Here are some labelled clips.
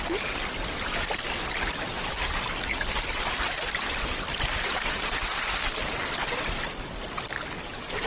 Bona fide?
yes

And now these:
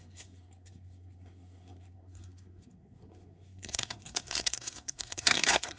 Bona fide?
no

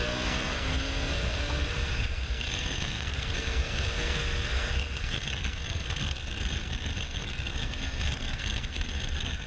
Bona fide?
no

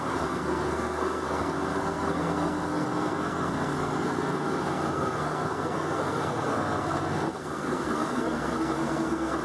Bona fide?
no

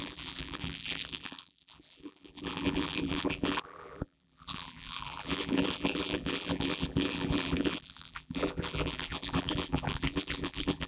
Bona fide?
no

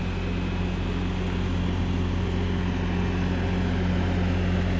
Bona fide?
yes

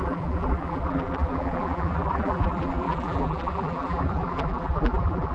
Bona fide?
no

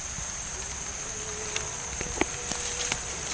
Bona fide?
yes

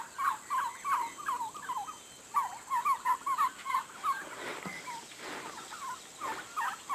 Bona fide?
yes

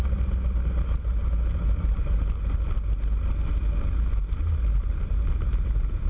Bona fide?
yes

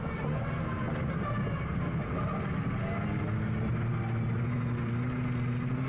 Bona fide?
yes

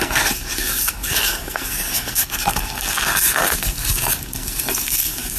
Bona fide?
no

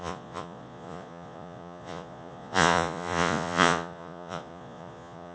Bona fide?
no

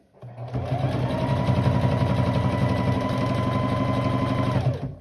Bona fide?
yes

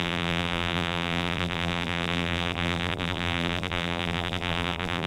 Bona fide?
no